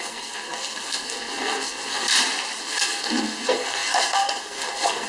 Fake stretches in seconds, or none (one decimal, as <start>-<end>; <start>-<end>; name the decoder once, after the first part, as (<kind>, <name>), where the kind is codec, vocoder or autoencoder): 0.0-2.1 (codec, SNAC); 2.6-5.1